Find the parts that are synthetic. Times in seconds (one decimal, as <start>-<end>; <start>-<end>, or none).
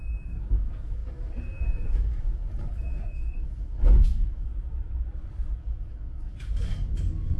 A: 0.0-4.5; 5.6-7.4